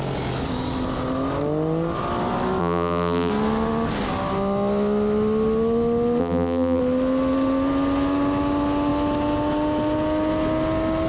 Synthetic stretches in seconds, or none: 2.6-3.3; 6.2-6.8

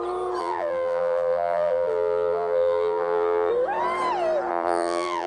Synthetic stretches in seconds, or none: 0.4-3.5; 4.5-5.3

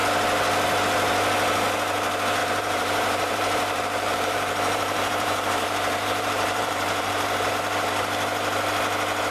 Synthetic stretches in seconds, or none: 2.4-7.5

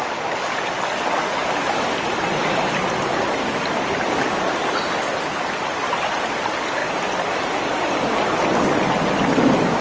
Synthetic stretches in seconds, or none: none